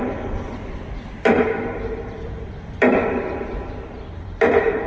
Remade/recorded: remade